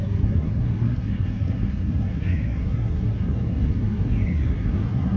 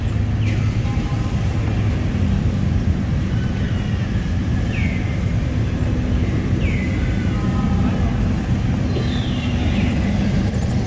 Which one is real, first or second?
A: second